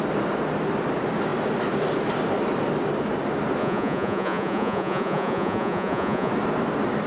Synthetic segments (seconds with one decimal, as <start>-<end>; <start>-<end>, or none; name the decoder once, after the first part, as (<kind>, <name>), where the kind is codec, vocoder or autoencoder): 3.6-6.3 (vocoder, Vocos)